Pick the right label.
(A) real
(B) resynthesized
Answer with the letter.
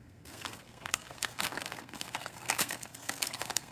B